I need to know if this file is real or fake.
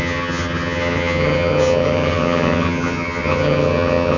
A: fake